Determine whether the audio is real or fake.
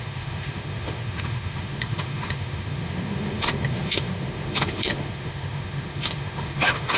fake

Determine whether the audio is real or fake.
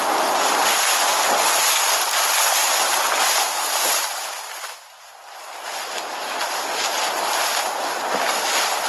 real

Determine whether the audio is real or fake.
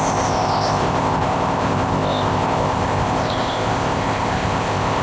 fake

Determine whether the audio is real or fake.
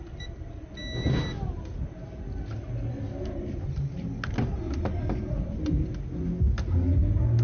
real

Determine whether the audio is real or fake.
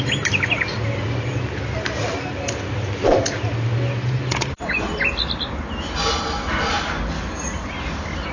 real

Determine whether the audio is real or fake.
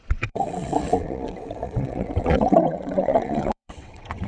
fake